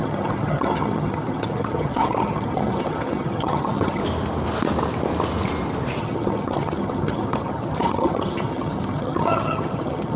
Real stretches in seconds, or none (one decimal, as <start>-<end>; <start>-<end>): 4.0-6.0